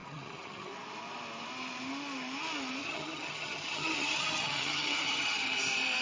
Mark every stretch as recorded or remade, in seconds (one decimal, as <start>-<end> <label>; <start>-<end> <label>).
0.0-0.7 remade; 0.7-2.8 recorded; 2.8-5.5 remade; 5.5-6.0 recorded

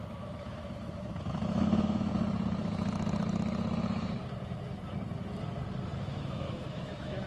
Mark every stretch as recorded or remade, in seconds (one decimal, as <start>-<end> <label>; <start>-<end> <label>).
0.0-2.1 remade; 2.1-6.0 recorded; 6.0-7.3 remade

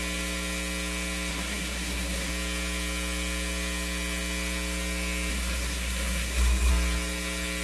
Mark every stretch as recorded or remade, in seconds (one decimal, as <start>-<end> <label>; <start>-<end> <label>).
0.0-1.3 recorded; 1.3-2.3 remade; 2.3-5.3 recorded; 5.3-6.7 remade; 6.7-7.6 recorded

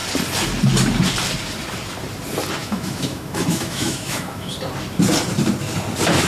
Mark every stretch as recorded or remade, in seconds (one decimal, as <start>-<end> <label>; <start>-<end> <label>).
0.0-2.6 recorded; 2.6-4.5 remade; 4.5-6.3 recorded

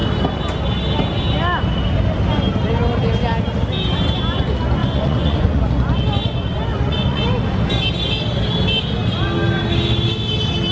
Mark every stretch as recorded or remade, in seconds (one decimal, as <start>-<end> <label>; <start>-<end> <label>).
0.0-4.8 recorded; 4.8-5.6 remade; 5.6-6.7 recorded; 6.7-7.3 remade; 7.3-10.7 recorded

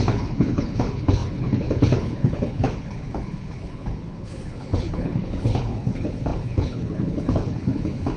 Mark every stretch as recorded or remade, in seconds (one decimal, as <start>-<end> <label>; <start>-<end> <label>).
0.0-8.2 remade

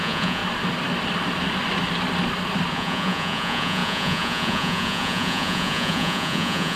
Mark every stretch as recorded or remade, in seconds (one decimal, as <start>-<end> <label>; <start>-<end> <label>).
0.0-0.4 remade; 0.4-2.7 recorded; 2.7-6.8 remade

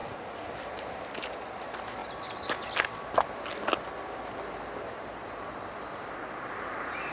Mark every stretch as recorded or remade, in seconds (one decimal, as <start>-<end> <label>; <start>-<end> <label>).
0.0-0.5 remade; 0.5-7.1 recorded